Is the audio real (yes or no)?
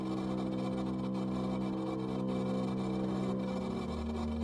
yes